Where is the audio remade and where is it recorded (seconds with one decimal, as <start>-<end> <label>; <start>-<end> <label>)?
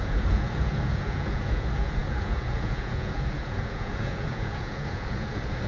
0.0-5.7 remade